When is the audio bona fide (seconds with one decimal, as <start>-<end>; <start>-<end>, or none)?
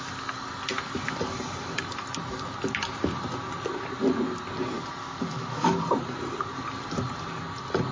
0.0-5.0; 5.8-7.9